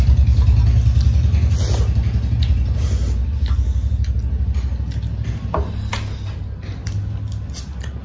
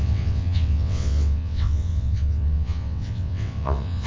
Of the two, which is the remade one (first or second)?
second